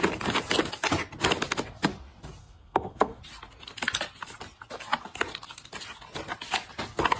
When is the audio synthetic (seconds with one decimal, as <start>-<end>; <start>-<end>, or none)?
2.4-3.2